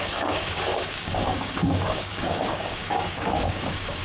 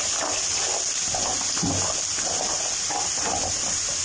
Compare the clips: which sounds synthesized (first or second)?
first